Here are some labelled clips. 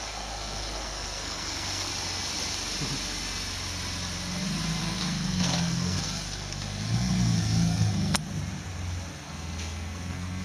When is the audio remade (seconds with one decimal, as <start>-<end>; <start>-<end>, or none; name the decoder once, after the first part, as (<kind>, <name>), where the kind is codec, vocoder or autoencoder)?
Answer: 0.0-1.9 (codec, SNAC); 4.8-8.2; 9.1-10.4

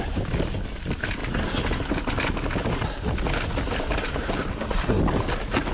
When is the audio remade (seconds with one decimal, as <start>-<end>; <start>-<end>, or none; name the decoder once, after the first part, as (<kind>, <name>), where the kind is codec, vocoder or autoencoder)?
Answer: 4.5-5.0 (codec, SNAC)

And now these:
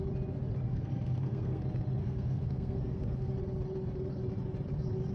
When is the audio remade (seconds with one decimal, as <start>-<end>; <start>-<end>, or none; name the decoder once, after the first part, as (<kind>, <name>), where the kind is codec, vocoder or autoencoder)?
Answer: 0.7-1.6 (codec, SNAC); 2.0-3.3

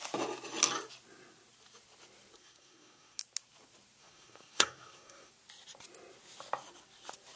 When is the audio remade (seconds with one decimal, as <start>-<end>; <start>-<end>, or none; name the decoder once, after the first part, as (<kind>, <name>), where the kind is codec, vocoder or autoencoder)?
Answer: 2.4-3.2 (codec, SNAC); 4.0-5.3

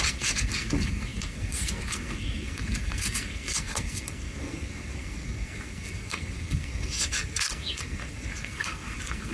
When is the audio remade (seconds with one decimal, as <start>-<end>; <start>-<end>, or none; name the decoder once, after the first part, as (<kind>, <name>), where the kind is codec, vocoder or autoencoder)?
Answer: 0.0-9.3 (codec, SNAC)

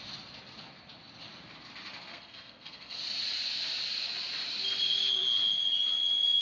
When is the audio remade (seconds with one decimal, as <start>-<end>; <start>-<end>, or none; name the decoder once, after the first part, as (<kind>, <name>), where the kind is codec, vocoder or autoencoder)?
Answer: 2.1-3.0 (codec, SNAC)

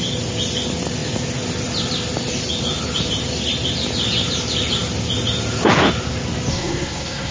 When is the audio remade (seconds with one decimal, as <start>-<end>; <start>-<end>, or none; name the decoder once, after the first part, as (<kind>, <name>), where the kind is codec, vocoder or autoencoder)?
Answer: 6.5-7.3 (codec, SNAC)